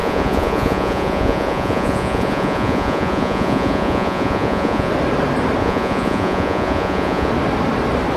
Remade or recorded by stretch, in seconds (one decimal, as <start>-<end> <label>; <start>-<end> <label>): 0.0-4.9 remade; 4.9-5.6 recorded; 5.6-7.3 remade; 7.3-8.2 recorded